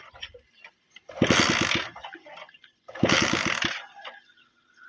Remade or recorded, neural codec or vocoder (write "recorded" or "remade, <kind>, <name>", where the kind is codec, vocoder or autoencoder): recorded